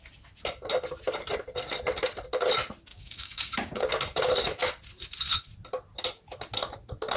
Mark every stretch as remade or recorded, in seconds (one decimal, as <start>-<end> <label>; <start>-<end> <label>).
0.0-2.9 recorded; 2.9-3.9 remade; 3.9-7.2 recorded